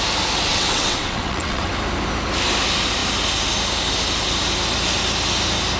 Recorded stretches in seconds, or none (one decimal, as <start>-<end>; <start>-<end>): 0.0-0.5; 1.7-5.8